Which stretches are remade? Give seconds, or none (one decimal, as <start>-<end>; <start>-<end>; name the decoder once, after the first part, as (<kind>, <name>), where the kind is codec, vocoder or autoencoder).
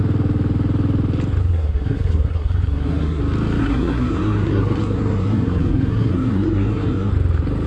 1.4-3.2 (codec, SNAC); 3.6-7.1